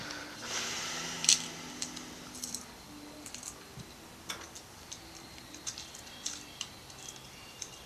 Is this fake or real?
fake